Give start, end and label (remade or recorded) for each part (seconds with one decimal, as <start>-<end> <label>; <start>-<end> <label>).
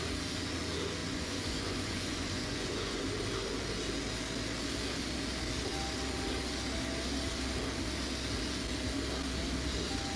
0.0-1.0 recorded; 1.0-3.0 remade; 3.0-10.2 recorded